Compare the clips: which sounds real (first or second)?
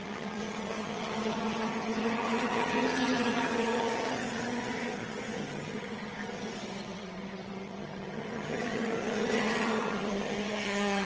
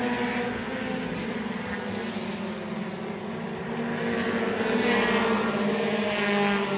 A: second